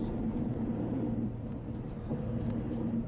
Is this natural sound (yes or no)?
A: no